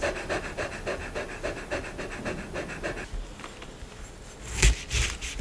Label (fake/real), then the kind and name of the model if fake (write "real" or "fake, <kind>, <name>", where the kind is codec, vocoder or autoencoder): real